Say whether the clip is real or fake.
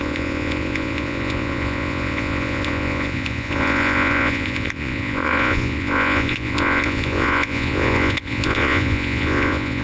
fake